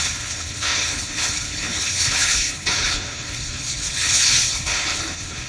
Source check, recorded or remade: remade